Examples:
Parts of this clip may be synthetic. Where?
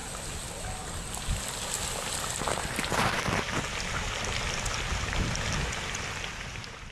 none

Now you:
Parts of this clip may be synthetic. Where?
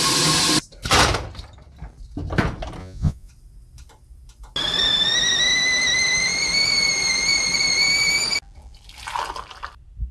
2.8-3.3 (vocoder, Vocos)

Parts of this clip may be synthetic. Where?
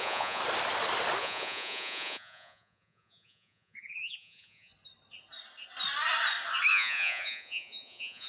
0.0-0.4 (vocoder, Vocos); 1.2-4.7; 6.7-8.3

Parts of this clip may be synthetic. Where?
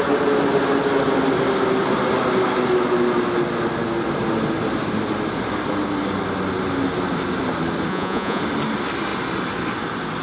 7.9-8.4 (vocoder, Vocos)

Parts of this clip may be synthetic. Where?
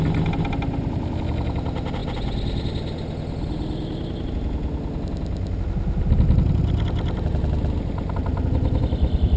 none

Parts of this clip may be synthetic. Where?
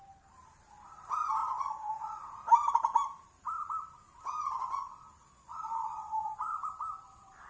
1.4-2.2 (vocoder, Vocos); 5.2-6.3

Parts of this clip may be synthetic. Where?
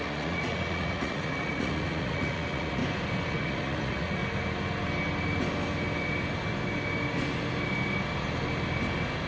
0.0-2.8 (vocoder, Vocos); 3.3-4.2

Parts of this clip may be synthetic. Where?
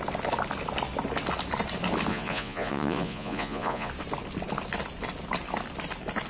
2.1-3.9 (vocoder, Vocos)